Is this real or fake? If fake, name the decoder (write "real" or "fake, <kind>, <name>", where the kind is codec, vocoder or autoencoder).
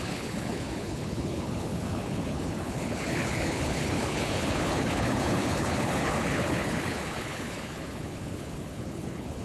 fake, codec, HILCodec